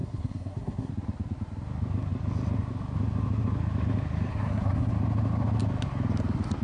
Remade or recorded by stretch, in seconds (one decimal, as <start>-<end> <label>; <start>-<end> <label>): 0.0-0.9 remade; 0.9-4.3 recorded; 4.3-4.9 remade; 4.9-6.6 recorded